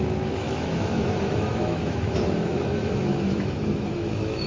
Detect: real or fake fake